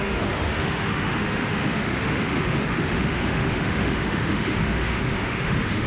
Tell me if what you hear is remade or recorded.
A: remade